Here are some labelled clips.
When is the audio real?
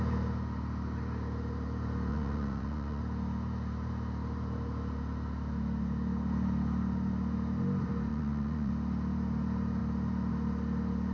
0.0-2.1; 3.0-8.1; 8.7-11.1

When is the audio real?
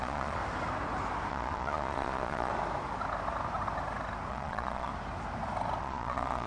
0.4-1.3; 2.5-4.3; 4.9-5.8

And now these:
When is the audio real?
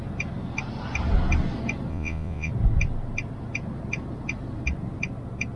0.0-1.9; 2.5-5.6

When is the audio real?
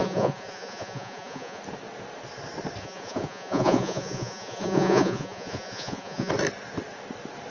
1.6-2.8; 6.3-7.5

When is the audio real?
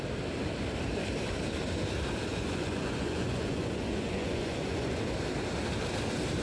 0.0-2.3; 5.0-6.4